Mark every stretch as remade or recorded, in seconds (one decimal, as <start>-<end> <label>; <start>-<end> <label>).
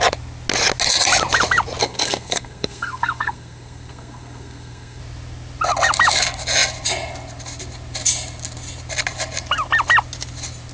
0.0-1.8 recorded; 1.8-5.0 remade; 5.0-10.7 recorded